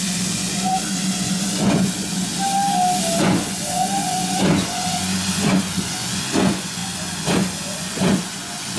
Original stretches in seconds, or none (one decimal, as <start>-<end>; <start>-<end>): 2.3-3.2